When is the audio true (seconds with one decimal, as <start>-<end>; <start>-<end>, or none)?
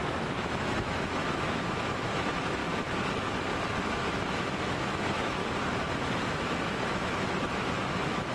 2.6-3.9; 5.4-6.3